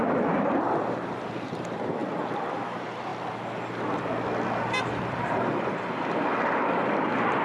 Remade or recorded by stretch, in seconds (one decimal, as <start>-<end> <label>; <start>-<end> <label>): 0.0-2.0 remade; 2.0-2.5 recorded; 2.5-3.1 remade; 3.1-4.9 recorded; 4.9-7.4 remade